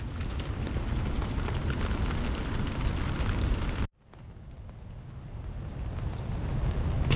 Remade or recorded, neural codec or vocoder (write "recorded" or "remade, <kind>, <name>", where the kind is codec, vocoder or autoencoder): recorded